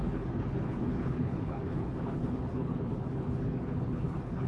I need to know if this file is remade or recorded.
remade